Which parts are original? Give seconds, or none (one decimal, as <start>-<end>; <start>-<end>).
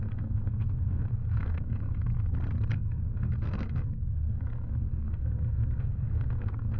2.1-2.6